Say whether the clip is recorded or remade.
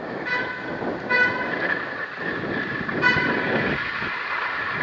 recorded